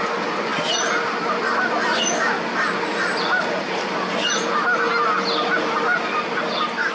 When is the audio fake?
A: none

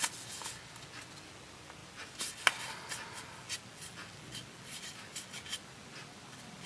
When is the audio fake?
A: none

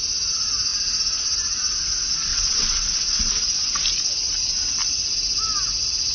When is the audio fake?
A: 2.3-3.3 (vocoder, WaveNeXt)

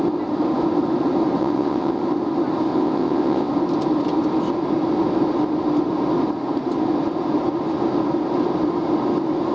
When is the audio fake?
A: 1.4-2.0 (vocoder, WaveNeXt); 2.7-3.5